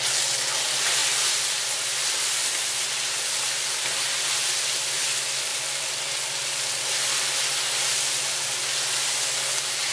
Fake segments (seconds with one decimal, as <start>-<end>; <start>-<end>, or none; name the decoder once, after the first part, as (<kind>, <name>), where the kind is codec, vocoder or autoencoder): 1.0-1.6 (vocoder, BigVGAN v2); 5.5-7.3